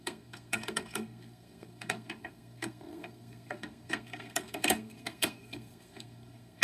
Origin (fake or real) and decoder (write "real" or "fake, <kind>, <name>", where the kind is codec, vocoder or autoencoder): fake, codec, SNAC